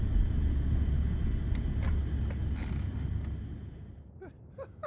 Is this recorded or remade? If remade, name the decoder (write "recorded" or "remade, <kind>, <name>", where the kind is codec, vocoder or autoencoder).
recorded